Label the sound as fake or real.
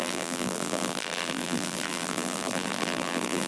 fake